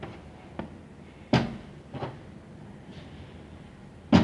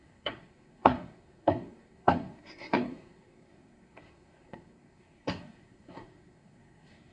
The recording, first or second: first